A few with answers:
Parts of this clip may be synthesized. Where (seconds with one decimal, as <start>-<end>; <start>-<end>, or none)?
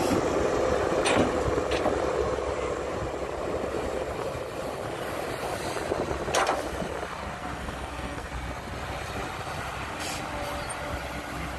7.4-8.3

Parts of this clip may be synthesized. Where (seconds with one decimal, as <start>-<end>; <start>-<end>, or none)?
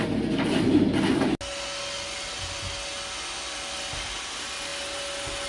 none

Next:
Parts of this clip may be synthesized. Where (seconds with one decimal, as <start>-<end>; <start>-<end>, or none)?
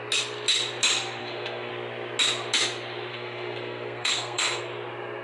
1.2-1.7; 3.1-4.6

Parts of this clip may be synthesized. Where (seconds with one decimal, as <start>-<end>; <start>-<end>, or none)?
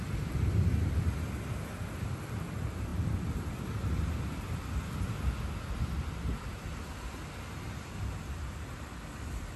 none